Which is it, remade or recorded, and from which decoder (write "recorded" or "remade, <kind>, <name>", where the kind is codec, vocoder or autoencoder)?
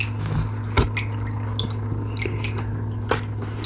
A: recorded